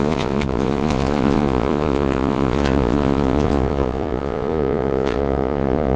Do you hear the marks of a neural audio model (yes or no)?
yes